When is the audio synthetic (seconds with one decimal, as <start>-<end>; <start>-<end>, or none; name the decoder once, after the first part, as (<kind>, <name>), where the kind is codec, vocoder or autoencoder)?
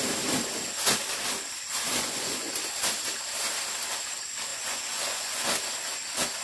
1.9-2.5 (vocoder, Vocos); 4.5-5.5